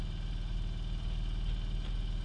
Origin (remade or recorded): recorded